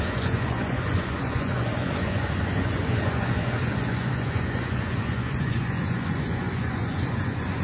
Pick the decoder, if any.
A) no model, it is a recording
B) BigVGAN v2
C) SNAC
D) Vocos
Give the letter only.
D